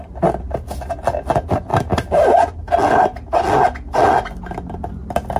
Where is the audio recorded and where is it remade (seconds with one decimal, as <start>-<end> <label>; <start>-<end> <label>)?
0.0-5.4 recorded

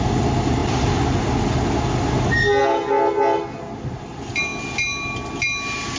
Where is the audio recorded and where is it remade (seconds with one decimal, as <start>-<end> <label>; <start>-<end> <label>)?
0.0-6.0 recorded

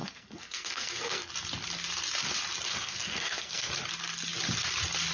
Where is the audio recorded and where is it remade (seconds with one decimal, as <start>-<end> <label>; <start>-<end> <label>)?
0.0-1.3 remade; 1.3-2.7 recorded; 2.7-3.7 remade; 3.7-5.1 recorded

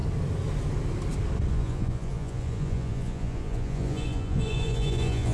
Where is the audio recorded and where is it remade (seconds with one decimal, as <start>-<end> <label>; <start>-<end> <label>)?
0.0-1.5 recorded; 1.5-5.3 remade

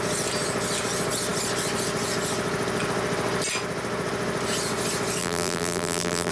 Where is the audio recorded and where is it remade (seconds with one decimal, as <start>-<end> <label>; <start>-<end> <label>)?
0.0-5.2 recorded; 5.2-6.3 remade

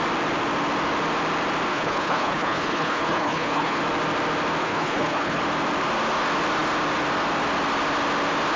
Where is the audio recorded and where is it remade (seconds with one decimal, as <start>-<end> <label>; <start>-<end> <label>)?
0.0-1.7 recorded; 1.7-3.8 remade; 3.8-4.6 recorded; 4.6-5.4 remade; 5.4-8.6 recorded